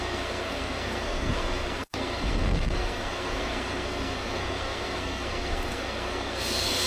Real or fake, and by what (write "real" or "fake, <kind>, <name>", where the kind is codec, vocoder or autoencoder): fake, codec, SNAC